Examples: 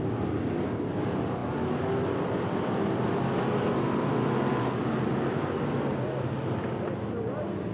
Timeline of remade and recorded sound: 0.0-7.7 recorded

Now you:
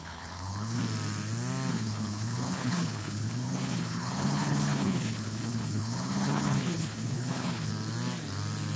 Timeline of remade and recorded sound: 0.0-0.8 remade; 0.8-1.7 recorded; 1.7-7.7 remade; 7.7-8.8 recorded